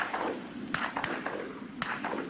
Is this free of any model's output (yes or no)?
yes